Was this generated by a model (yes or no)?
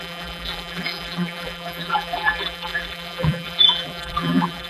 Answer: yes